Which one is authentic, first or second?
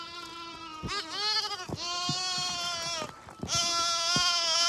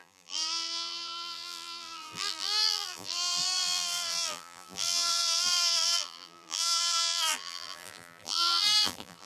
first